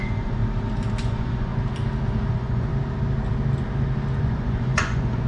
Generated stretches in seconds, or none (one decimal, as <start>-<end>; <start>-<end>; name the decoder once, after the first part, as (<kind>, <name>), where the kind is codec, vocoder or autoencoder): 0.0-0.4 (vocoder, Vocos); 1.0-1.5; 2.3-2.7; 4.2-5.3